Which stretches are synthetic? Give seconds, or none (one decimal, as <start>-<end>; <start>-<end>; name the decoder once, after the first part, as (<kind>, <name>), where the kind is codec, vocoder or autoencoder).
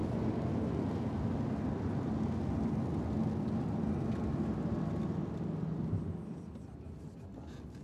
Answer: none